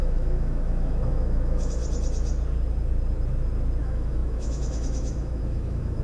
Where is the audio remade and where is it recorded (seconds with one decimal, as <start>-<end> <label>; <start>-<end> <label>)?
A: 0.0-1.8 remade; 1.8-3.8 recorded; 3.8-6.0 remade